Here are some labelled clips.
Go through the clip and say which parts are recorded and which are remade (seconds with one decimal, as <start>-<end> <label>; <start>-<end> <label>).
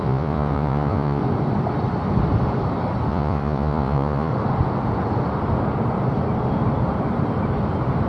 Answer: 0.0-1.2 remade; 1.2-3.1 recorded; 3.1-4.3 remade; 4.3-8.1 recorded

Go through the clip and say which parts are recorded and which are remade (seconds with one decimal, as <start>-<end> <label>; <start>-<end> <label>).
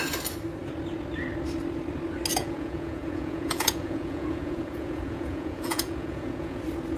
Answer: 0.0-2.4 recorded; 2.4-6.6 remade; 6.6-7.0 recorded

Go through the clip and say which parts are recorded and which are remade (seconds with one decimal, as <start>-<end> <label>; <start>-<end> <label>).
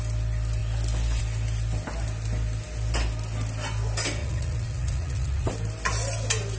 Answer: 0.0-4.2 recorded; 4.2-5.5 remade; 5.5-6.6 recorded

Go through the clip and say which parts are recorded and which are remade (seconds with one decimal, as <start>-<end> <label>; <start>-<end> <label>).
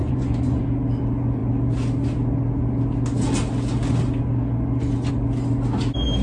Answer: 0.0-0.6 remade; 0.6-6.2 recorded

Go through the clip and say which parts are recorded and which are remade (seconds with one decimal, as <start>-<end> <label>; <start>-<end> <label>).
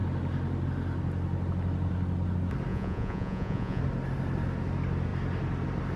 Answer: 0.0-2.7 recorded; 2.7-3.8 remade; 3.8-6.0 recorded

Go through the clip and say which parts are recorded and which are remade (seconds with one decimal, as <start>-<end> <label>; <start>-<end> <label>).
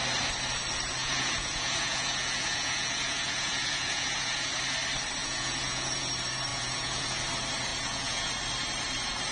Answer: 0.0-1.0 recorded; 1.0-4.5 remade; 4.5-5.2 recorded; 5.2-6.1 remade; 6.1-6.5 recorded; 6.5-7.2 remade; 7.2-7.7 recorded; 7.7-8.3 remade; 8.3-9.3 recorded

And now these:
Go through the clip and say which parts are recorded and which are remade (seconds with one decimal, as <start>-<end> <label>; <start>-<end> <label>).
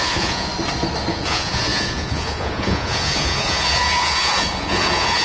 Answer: 0.0-0.5 remade; 0.5-1.1 recorded; 1.1-5.2 remade